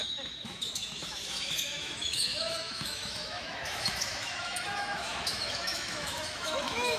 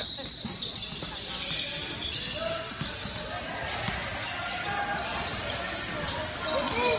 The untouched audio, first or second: second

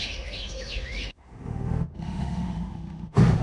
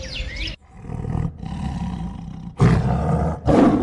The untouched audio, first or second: second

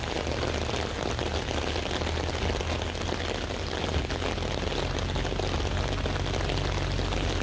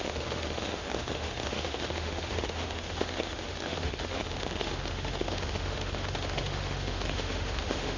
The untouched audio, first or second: first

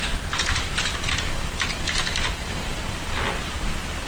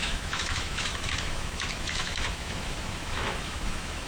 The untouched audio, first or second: first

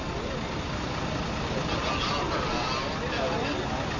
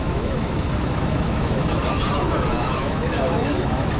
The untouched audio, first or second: first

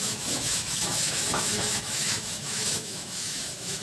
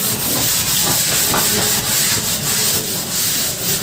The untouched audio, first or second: second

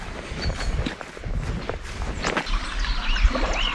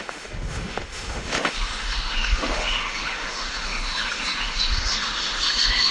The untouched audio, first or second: first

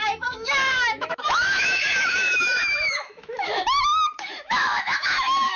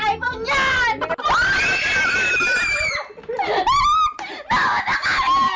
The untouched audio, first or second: second